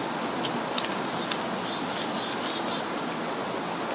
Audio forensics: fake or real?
real